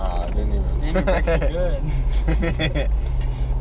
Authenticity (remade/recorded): recorded